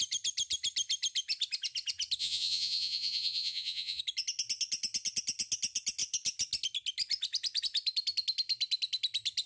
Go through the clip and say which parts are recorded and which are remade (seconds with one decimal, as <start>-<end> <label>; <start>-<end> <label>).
0.0-2.2 recorded; 2.2-4.0 remade; 4.0-9.5 recorded